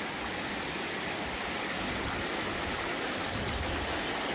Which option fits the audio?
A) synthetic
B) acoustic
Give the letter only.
B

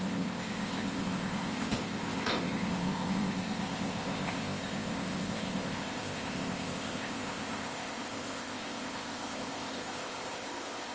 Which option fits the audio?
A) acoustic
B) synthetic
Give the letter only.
B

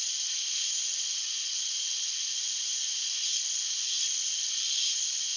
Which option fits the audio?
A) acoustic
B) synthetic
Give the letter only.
A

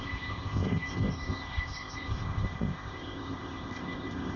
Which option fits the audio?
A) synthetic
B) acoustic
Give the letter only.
A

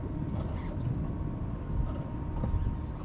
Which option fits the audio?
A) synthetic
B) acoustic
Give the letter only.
B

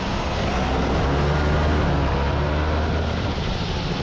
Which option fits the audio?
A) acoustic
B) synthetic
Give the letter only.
A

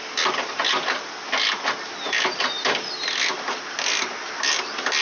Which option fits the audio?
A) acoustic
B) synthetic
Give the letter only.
A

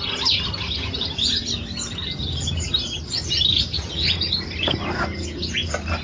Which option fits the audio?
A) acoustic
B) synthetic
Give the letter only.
A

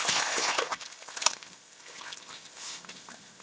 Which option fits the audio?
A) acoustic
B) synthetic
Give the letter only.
B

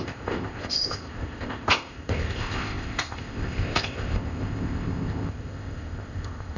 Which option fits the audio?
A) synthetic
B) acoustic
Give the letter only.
A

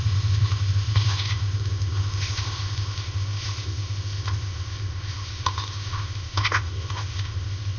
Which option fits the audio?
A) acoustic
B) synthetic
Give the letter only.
B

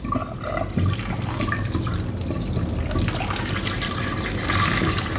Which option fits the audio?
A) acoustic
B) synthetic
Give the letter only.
A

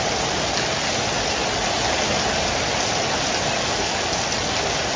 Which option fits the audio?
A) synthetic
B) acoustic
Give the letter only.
B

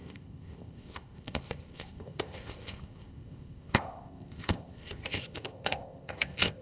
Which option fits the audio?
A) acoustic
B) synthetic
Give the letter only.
B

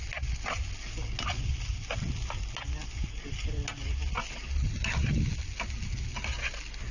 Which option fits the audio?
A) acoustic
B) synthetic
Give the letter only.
A